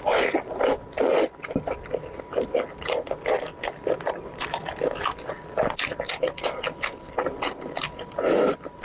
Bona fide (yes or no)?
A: yes